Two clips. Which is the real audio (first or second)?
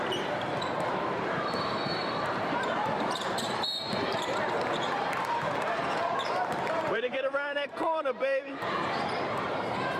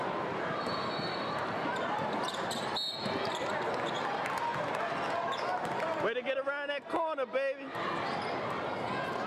second